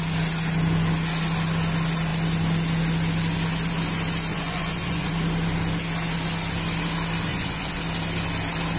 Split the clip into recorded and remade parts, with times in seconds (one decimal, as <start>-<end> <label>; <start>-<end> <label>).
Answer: 0.0-4.3 recorded; 4.3-5.1 remade; 5.1-7.3 recorded; 7.3-7.8 remade; 7.8-8.8 recorded